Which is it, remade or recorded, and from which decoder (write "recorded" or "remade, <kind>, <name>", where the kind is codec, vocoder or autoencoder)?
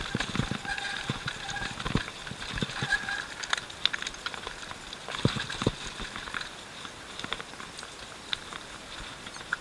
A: recorded